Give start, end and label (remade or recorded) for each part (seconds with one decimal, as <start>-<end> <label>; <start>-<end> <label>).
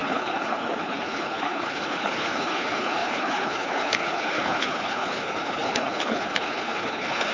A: 0.0-7.3 remade